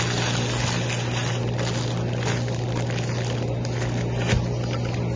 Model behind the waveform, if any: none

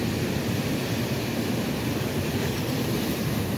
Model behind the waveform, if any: none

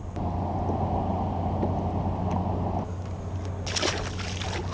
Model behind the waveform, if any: none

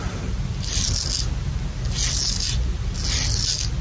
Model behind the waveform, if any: none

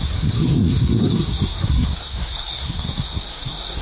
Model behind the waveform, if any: codec, SNAC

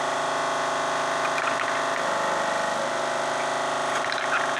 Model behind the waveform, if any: none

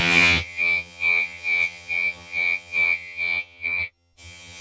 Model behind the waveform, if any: vocoder, HiFi-GAN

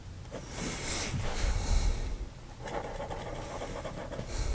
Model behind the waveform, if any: none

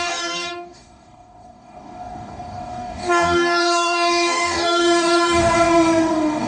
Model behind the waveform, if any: codec, DAC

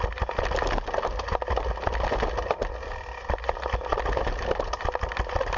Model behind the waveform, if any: none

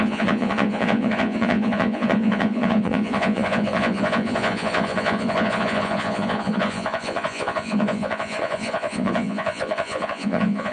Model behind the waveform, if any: vocoder, Vocos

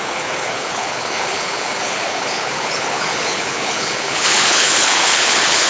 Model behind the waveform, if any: codec, HILCodec